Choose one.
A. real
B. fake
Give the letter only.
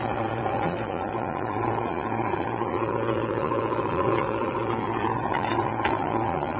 B